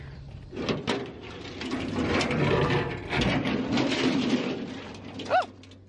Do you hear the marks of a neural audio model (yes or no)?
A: no